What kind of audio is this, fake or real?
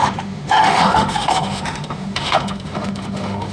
fake